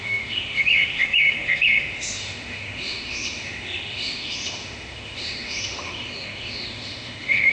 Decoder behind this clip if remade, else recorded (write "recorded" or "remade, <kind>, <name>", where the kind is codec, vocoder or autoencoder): remade, autoencoder, DAC-VAE